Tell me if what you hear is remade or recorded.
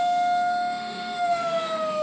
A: remade